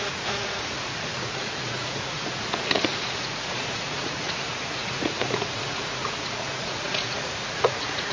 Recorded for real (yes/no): no